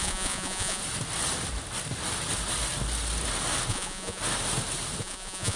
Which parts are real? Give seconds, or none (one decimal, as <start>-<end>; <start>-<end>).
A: 0.8-3.7; 4.2-5.0